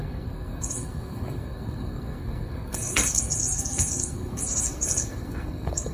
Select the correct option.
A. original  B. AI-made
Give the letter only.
B